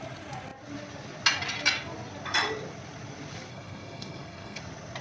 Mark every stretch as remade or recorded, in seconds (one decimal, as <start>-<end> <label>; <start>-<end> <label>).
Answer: 0.0-3.5 recorded; 3.5-4.6 remade; 4.6-5.0 recorded